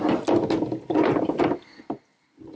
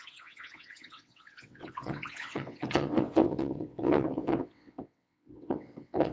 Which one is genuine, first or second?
first